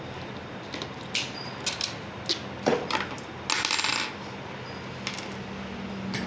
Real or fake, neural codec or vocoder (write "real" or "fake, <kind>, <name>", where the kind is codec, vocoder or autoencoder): real